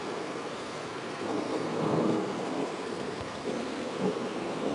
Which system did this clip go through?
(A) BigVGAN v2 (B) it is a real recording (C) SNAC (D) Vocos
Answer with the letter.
C